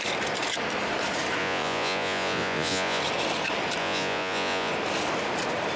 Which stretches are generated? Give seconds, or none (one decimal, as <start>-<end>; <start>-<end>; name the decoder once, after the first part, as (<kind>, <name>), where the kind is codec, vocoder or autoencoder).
1.4-3.0 (vocoder, Vocos); 3.8-4.7